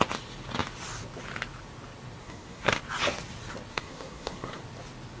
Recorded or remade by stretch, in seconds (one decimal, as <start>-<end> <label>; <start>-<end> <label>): 0.0-2.2 recorded; 2.2-2.8 remade; 2.8-3.7 recorded; 3.7-4.6 remade; 4.6-5.2 recorded